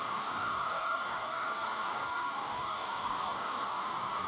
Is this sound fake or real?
fake